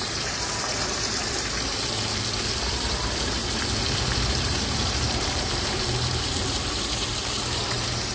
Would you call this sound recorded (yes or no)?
no